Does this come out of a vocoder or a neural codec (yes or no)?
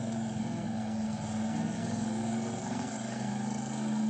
yes